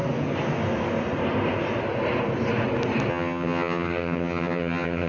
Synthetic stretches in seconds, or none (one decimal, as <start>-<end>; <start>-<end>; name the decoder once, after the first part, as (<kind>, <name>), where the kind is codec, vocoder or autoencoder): 3.1-5.1 (vocoder, HiFi-GAN)